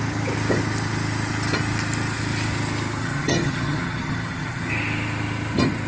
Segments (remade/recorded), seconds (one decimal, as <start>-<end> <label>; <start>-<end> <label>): 0.0-3.0 recorded; 3.0-4.7 remade; 4.7-5.9 recorded